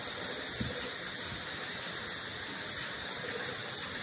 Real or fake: real